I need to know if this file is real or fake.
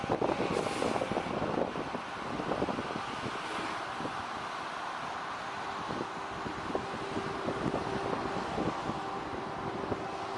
real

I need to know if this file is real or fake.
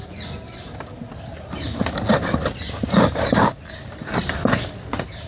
real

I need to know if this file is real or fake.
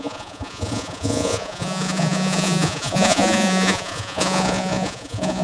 fake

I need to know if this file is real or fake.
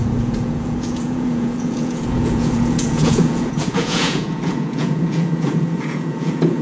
fake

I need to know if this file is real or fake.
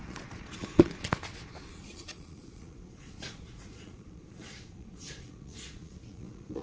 fake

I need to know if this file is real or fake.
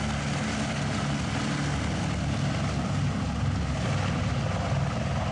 real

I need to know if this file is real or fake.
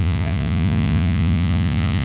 fake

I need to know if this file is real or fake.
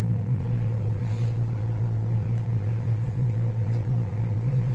fake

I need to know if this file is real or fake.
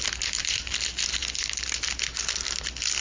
real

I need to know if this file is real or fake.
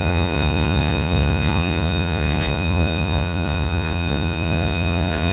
fake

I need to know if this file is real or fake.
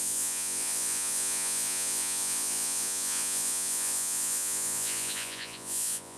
fake